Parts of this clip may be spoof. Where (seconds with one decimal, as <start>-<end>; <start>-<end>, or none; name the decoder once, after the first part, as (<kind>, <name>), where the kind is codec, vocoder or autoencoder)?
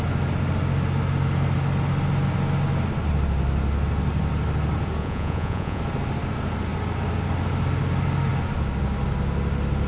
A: 5.0-5.8 (vocoder, Vocos)